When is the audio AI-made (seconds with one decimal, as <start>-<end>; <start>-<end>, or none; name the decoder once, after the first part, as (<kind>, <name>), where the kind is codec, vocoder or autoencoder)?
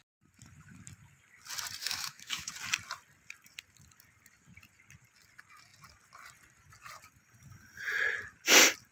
1.8-2.5 (autoencoder, DAC-VAE)